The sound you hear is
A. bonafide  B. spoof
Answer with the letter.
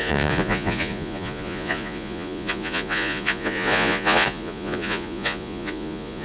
B